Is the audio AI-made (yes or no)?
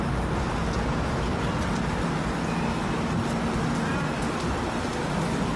no